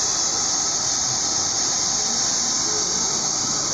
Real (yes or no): yes